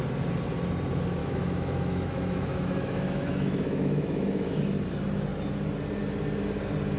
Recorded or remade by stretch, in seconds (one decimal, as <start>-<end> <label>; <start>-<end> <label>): 0.0-1.2 recorded; 1.2-4.6 remade; 4.6-7.0 recorded